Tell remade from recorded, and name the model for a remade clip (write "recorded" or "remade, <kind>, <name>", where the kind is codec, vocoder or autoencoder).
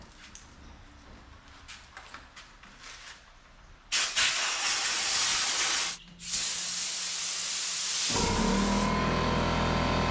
recorded